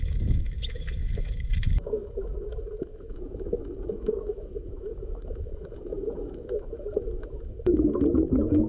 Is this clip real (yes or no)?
no